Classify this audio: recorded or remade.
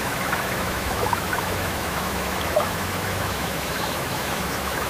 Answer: remade